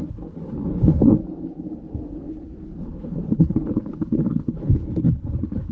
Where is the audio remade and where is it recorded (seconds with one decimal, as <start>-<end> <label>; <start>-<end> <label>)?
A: 0.0-1.2 remade; 1.2-2.8 recorded; 2.8-5.7 remade